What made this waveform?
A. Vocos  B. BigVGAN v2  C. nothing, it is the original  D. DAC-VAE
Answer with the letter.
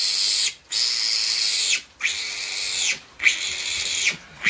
C